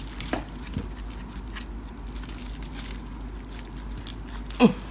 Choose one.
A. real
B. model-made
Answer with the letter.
A